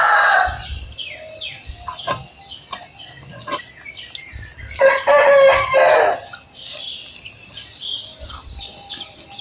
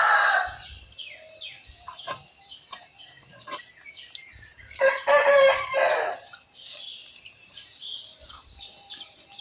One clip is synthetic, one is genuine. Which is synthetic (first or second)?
second